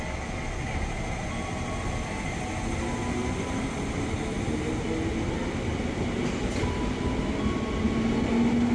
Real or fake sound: real